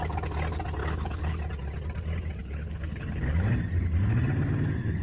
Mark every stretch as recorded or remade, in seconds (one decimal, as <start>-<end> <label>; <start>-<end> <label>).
0.0-0.8 recorded; 0.8-1.4 remade; 1.4-2.4 recorded; 2.4-3.5 remade; 3.5-5.0 recorded